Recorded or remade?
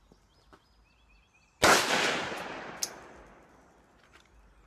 recorded